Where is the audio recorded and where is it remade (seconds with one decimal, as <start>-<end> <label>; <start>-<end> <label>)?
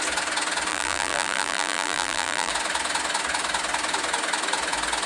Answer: 0.0-0.7 recorded; 0.7-2.5 remade; 2.5-5.1 recorded